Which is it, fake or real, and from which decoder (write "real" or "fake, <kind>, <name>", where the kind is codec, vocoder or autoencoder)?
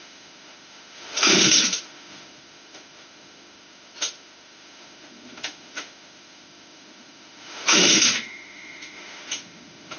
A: fake, autoencoder, DAC-VAE